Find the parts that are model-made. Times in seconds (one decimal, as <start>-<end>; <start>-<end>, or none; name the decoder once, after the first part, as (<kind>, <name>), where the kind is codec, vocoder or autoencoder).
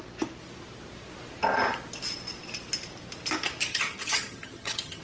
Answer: 3.7-5.0 (vocoder, HiFi-GAN)